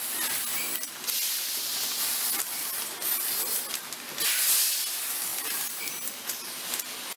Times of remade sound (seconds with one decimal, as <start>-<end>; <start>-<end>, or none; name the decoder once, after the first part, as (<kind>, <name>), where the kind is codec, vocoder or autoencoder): 5.3-5.9 (vocoder, BigVGAN v2)